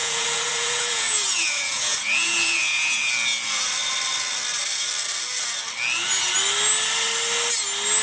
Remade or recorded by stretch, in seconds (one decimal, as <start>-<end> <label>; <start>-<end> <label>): 0.0-3.1 remade; 3.1-8.0 recorded